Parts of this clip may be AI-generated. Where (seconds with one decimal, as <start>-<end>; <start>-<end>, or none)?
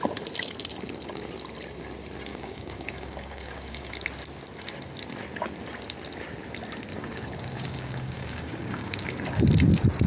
2.3-3.9; 6.9-9.4